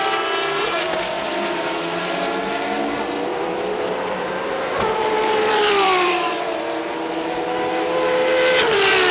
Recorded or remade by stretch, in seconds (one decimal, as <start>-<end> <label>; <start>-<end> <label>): 0.0-3.3 recorded; 3.3-6.9 remade; 6.9-9.1 recorded